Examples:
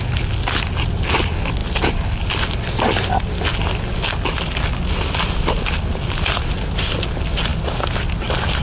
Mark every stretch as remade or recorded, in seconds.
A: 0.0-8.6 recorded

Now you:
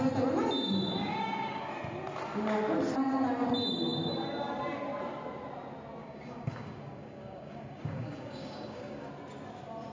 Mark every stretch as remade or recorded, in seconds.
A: 0.0-1.0 recorded; 1.0-1.7 remade; 1.7-6.0 recorded; 6.0-9.1 remade; 9.1-9.9 recorded

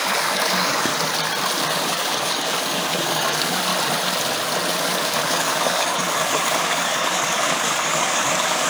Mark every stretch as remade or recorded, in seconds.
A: 0.0-0.9 remade; 0.9-1.7 recorded; 1.7-3.7 remade; 3.7-4.8 recorded; 4.8-8.7 remade

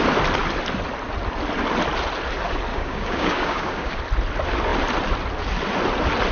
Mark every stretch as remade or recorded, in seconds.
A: 0.0-2.7 recorded; 2.7-4.0 remade; 4.0-6.3 recorded

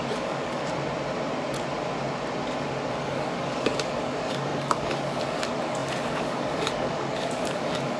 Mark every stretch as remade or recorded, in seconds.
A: 0.0-0.6 remade; 0.6-2.9 recorded; 2.9-8.0 remade

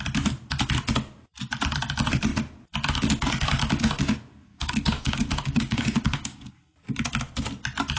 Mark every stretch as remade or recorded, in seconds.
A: 0.0-4.5 recorded; 4.5-6.5 remade; 6.5-8.0 recorded

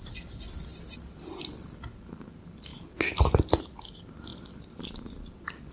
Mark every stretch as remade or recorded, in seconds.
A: 0.0-5.7 recorded